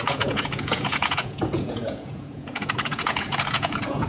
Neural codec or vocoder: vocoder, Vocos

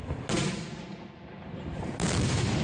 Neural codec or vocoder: none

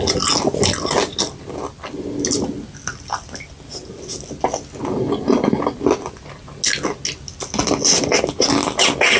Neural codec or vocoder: none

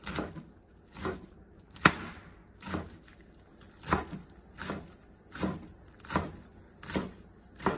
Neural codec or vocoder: none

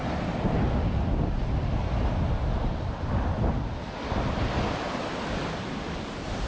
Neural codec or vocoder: none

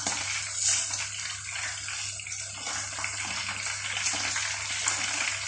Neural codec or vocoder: none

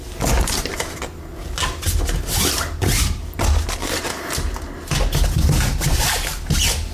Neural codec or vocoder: none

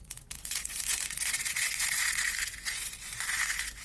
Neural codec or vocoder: vocoder, Vocos